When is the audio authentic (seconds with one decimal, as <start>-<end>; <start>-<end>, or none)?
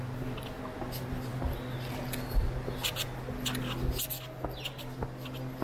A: 0.0-5.6